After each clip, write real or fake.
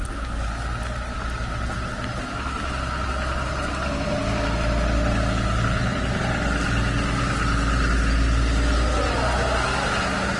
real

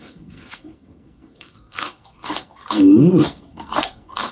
fake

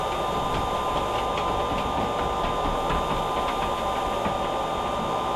real